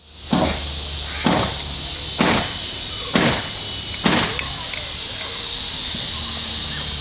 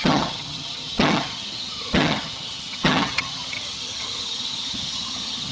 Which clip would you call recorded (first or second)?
first